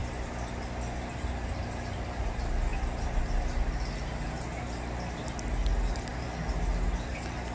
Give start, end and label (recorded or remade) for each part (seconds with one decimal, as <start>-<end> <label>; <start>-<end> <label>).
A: 0.0-7.5 recorded